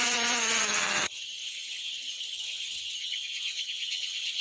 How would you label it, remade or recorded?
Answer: remade